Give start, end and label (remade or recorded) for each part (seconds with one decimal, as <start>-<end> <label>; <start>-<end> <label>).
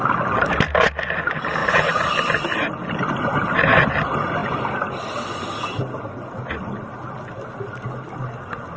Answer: 0.0-1.6 recorded; 1.6-2.1 remade; 2.1-8.8 recorded